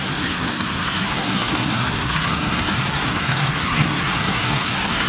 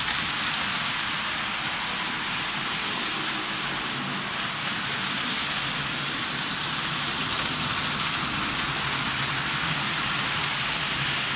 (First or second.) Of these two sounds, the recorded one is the second